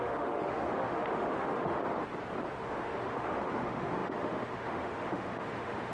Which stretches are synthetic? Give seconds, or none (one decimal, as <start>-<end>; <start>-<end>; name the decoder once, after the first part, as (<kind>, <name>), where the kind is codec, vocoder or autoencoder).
0.0-1.8 (autoencoder, DAC-VAE); 2.5-5.9